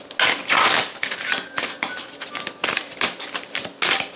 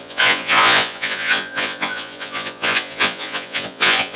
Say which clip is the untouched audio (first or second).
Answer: first